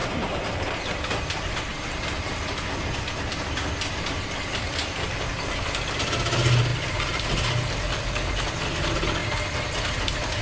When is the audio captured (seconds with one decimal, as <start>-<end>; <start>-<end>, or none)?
0.7-1.7; 2.3-6.7; 7.2-10.4